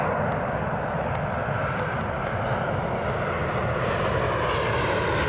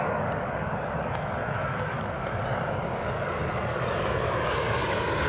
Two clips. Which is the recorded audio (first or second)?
first